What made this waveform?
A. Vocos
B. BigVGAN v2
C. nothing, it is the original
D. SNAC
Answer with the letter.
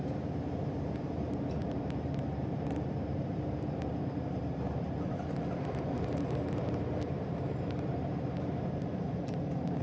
B